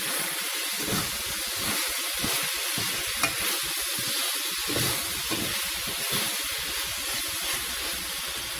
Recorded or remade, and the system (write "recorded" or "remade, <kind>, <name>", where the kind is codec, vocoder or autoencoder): recorded